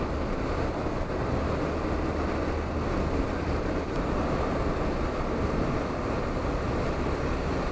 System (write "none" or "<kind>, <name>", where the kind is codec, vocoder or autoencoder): none